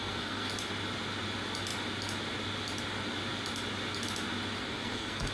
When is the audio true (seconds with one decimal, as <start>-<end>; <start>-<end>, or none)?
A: 0.5-4.6